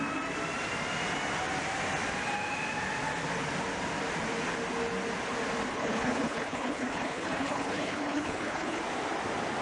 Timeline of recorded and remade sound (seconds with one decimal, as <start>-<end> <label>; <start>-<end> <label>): 0.0-5.7 recorded; 5.7-8.8 remade; 8.8-9.6 recorded